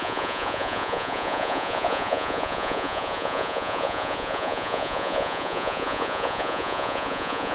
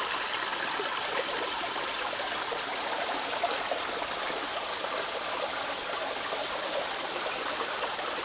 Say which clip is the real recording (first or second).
second